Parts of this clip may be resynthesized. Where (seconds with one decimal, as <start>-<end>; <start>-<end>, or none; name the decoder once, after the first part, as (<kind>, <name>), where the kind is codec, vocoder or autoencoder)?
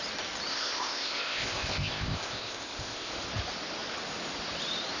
0.5-3.1 (codec, ZipCodec)